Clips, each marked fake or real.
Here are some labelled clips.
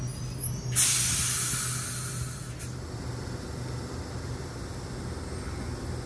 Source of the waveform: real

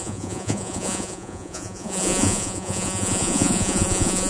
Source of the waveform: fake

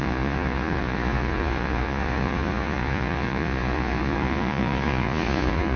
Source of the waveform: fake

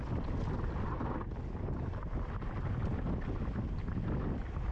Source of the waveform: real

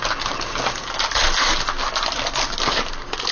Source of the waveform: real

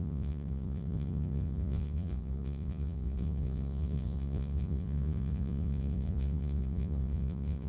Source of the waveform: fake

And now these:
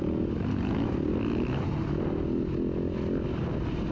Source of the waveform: real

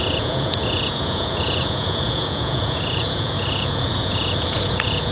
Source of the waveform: fake